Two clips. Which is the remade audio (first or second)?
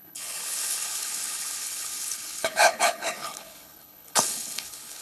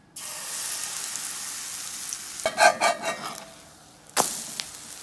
first